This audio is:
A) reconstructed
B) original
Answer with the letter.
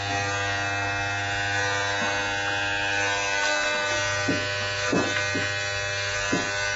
B